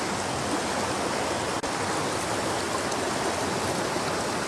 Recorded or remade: recorded